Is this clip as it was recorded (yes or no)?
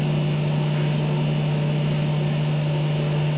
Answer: yes